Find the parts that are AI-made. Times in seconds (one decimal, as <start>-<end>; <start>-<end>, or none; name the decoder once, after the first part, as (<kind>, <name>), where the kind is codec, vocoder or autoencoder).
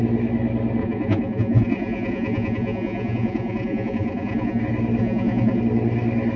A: 0.8-4.6 (vocoder, Vocos); 5.0-5.6